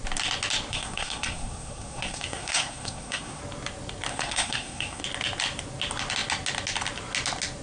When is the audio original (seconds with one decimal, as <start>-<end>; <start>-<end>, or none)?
0.0-0.7; 3.4-4.1; 5.0-7.6